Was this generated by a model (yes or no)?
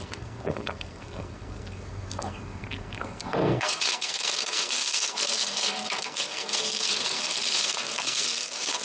yes